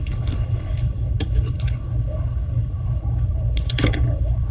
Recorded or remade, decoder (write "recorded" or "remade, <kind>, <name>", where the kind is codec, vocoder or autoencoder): remade, codec, HILCodec